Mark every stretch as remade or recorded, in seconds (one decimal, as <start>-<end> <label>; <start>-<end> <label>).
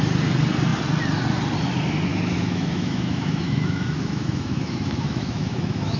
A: 0.0-2.1 recorded; 2.1-6.0 remade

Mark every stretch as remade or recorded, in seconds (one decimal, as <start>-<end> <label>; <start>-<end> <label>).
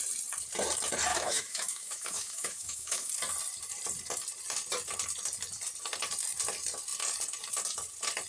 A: 0.0-1.1 recorded; 1.1-3.1 remade; 3.1-8.3 recorded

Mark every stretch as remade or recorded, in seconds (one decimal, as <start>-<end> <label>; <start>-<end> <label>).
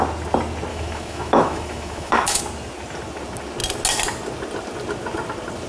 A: 0.0-0.7 recorded; 0.7-2.4 remade; 2.4-5.7 recorded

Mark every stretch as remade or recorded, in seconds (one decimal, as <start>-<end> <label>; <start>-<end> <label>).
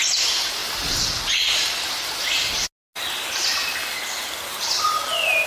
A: 0.0-5.5 recorded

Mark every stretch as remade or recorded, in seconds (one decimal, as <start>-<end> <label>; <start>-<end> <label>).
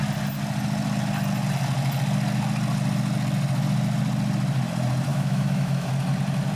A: 0.0-5.1 recorded; 5.1-5.9 remade; 5.9-6.6 recorded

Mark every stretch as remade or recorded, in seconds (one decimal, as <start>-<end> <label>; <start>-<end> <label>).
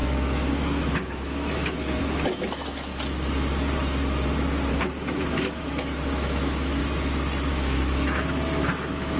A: 0.0-2.9 remade; 2.9-4.7 recorded; 4.7-6.8 remade; 6.8-7.5 recorded; 7.5-9.2 remade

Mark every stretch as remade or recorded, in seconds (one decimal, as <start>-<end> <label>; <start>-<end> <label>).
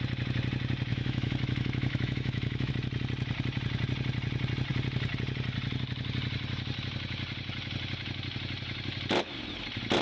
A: 0.0-0.9 recorded; 0.9-2.7 remade; 2.7-10.0 recorded